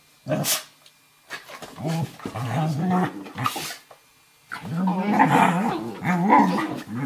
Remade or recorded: recorded